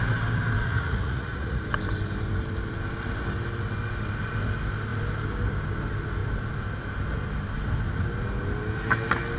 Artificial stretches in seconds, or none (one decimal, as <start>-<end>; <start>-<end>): 0.6-1.6